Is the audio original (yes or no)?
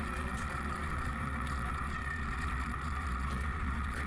no